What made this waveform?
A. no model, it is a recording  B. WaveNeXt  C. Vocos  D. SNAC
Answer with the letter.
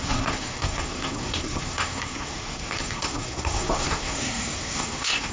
D